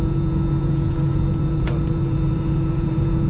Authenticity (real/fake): fake